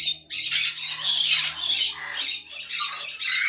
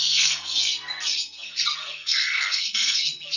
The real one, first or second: first